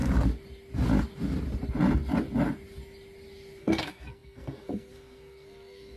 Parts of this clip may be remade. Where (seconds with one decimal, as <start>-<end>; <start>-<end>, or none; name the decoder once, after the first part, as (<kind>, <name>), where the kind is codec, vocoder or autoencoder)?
3.6-6.0 (codec, SNAC)